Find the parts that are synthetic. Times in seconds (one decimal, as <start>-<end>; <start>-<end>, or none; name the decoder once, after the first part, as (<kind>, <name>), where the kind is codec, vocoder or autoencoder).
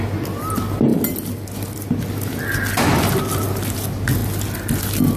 none